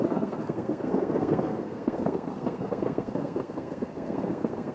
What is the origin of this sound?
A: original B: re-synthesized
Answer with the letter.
B